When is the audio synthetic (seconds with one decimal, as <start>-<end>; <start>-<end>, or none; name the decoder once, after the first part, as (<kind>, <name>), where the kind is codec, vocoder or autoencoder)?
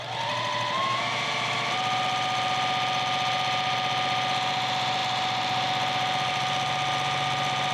0.8-1.7 (autoencoder, DAC-VAE)